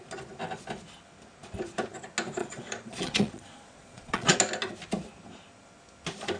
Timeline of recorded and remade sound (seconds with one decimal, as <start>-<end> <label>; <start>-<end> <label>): 0.0-2.4 recorded; 2.4-4.4 remade; 4.4-6.4 recorded